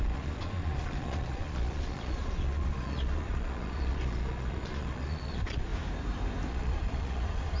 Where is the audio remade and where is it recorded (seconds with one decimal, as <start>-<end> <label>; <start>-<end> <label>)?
0.0-5.7 remade; 5.7-6.5 recorded; 6.5-7.6 remade